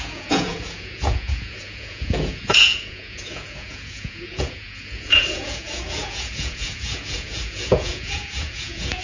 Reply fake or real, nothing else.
fake